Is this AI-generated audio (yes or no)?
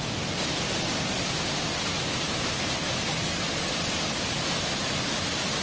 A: no